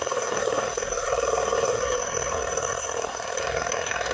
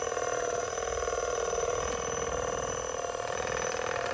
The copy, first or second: first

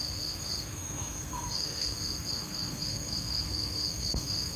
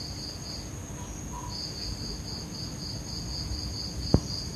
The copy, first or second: first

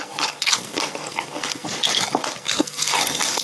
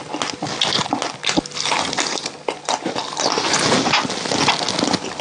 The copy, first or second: first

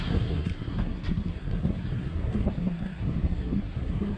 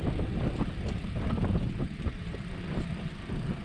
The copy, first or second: first